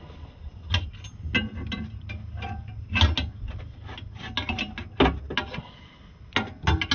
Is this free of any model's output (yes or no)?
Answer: yes